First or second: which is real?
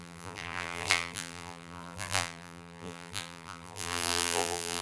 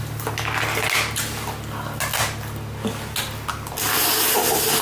second